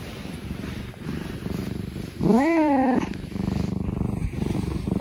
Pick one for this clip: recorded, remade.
remade